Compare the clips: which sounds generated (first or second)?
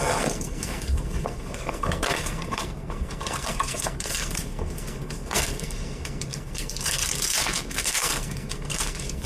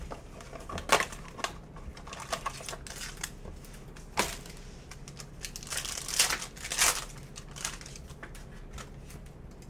first